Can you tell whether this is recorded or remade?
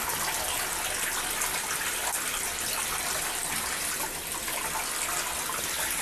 remade